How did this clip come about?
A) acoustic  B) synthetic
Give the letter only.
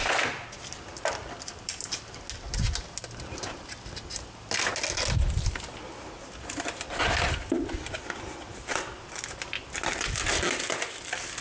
A